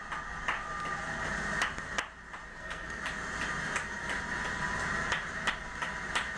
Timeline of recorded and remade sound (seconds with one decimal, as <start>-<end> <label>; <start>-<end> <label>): 0.0-2.5 recorded; 2.5-3.0 remade; 3.0-6.4 recorded